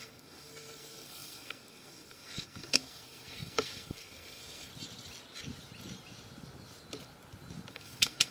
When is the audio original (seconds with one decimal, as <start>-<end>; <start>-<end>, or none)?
4.7-7.7